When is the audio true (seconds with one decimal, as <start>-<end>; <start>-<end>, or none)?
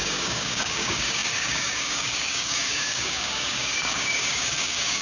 none